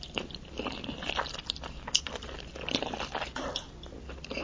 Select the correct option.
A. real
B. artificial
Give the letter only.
A